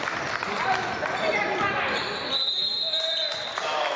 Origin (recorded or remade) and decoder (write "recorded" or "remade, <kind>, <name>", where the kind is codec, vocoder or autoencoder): recorded